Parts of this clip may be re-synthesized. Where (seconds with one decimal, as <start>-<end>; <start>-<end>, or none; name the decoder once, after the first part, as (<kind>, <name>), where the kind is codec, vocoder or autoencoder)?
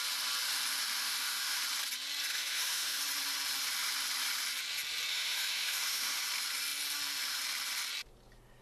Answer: 1.0-1.6 (autoencoder, DAC-VAE); 2.3-3.0; 5.1-6.2